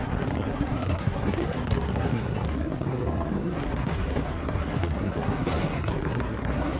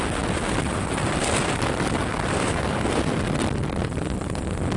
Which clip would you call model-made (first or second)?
first